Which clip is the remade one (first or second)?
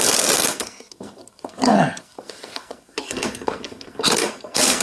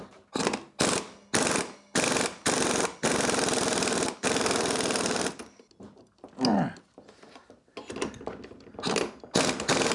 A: first